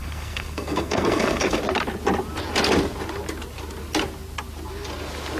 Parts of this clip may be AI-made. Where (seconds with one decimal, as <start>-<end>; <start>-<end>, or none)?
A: 0.0-1.6

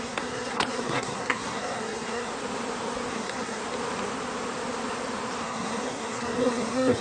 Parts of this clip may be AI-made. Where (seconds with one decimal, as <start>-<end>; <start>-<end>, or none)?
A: 0.0-2.3; 3.1-3.6; 5.4-7.0

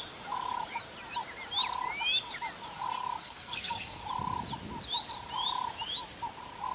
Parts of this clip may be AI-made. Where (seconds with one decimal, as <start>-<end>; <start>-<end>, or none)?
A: 3.2-4.0

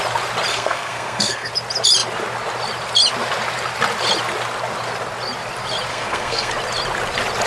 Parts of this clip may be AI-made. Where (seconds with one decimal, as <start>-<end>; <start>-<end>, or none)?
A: 0.5-1.5; 5.9-6.5